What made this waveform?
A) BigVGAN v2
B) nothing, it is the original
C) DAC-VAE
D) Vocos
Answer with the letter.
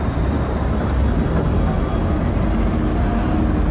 B